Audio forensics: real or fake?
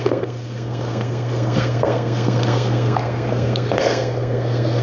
fake